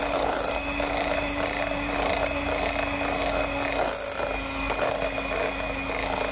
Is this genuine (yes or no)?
yes